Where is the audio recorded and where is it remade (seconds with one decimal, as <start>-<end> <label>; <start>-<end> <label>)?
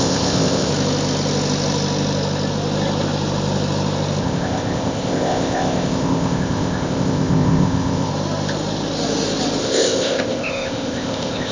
0.0-0.7 remade; 0.7-4.2 recorded; 4.2-8.1 remade; 8.1-9.6 recorded; 9.6-11.5 remade